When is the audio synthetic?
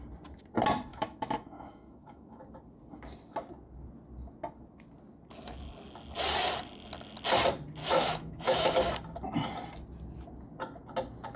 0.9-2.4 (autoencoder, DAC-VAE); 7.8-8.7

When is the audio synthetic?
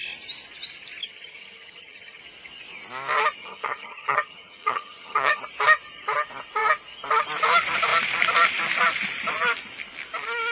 1.0-2.2 (vocoder, HiFi-GAN); 3.4-5.4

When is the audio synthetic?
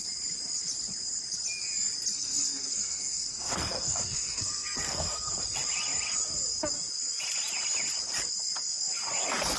2.1-5.3 (codec, SNAC)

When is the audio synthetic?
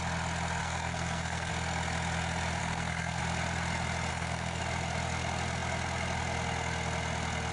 0.6-1.5 (codec, SNAC); 2.6-3.2; 4.1-4.6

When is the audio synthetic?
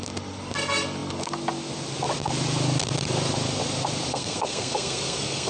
4.1-5.5 (codec, SNAC)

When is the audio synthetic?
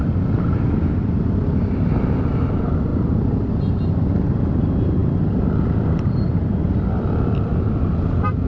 none